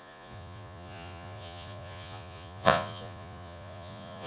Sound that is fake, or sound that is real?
fake